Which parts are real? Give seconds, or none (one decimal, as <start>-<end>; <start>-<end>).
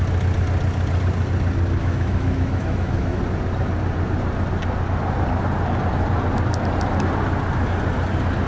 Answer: 0.0-1.8; 3.2-8.5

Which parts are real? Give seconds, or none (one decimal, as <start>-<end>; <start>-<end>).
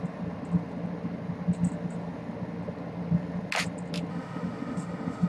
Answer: 0.0-4.1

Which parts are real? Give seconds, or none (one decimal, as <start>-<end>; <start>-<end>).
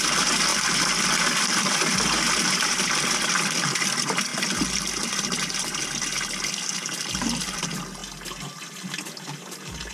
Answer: 0.0-9.9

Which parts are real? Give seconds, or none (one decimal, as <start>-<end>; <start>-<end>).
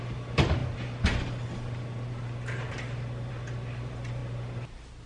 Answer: 0.0-5.1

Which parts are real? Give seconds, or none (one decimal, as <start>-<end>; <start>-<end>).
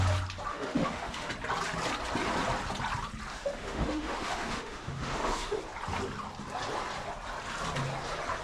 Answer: 0.0-0.5; 1.3-3.3; 5.6-8.4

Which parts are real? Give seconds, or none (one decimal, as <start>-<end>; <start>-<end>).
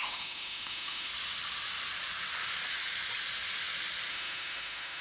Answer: 1.1-4.1